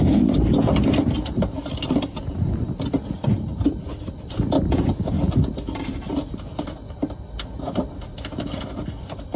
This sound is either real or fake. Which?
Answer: fake